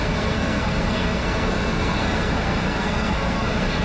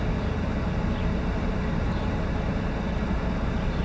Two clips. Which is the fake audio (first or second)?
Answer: first